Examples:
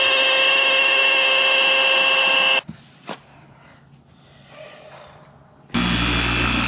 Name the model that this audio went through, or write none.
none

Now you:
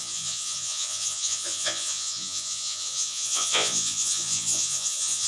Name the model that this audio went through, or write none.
vocoder, Vocos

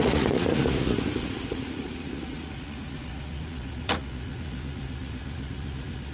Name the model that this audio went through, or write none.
vocoder, Vocos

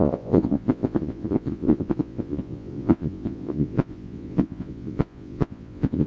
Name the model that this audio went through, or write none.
vocoder, Vocos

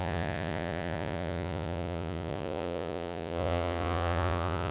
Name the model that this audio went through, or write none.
vocoder, Vocos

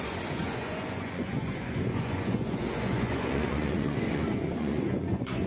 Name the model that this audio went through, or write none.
vocoder, Vocos